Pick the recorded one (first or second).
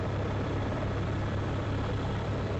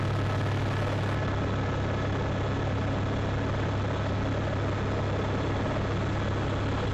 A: second